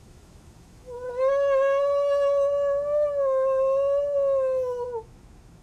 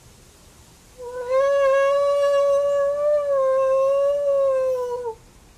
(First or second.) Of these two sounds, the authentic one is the second